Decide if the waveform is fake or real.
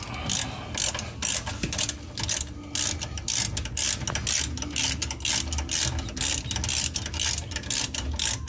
real